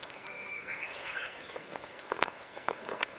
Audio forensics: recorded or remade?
remade